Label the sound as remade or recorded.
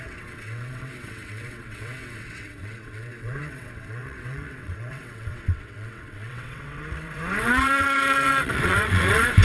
remade